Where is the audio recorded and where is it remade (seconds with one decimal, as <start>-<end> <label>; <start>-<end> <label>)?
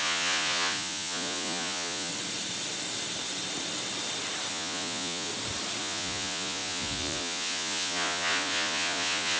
0.0-2.1 remade; 2.1-4.5 recorded; 4.5-5.3 remade; 5.3-5.8 recorded; 5.8-9.4 remade